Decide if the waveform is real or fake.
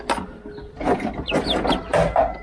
real